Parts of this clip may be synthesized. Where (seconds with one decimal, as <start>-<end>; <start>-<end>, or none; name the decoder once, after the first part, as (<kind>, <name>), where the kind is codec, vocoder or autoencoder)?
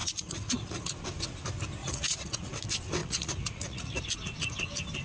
0.0-0.9 (vocoder, Vocos); 1.8-2.5; 3.0-4.0